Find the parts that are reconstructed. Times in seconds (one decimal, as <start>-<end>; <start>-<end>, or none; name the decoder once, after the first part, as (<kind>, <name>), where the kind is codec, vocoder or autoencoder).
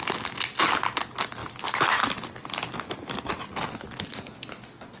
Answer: none